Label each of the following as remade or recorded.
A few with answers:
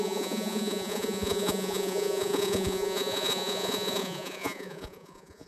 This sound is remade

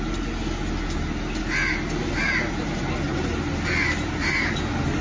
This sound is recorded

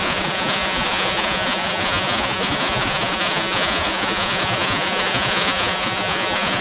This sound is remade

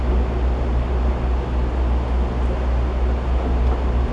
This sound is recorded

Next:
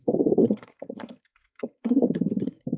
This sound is remade